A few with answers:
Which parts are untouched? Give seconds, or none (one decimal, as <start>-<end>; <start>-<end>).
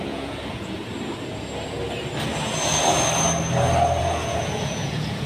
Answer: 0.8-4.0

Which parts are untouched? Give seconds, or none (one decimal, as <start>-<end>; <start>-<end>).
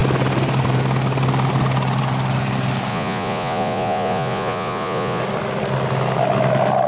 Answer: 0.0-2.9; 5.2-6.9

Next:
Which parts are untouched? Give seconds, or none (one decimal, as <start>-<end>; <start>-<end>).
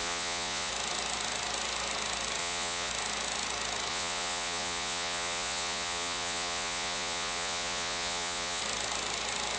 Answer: 0.7-2.4; 2.9-3.9; 8.6-9.6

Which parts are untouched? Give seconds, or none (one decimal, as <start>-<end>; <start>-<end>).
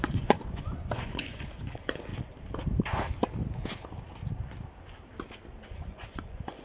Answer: 2.1-5.7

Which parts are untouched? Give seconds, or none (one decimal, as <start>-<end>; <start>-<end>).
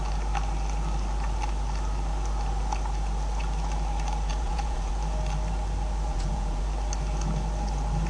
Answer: 0.0-4.3; 4.9-6.1; 6.6-8.1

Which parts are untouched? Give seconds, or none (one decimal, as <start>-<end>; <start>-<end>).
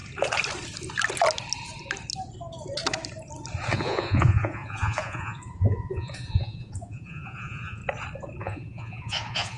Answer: 0.0-3.7; 7.8-8.4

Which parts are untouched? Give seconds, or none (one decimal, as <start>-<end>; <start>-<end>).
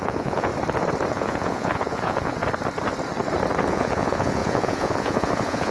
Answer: 0.5-1.1; 2.4-3.6